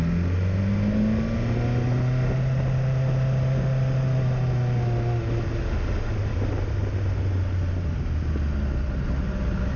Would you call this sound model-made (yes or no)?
no